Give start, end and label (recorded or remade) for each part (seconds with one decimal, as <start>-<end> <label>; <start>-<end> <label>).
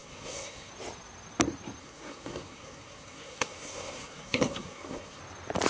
0.0-0.7 remade; 0.7-1.8 recorded; 1.8-5.2 remade; 5.2-5.7 recorded